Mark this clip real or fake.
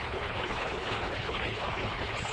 fake